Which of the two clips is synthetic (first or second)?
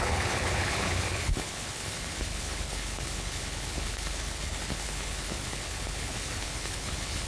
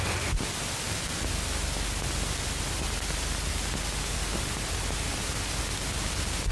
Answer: first